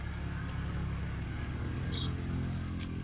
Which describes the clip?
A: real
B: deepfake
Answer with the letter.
B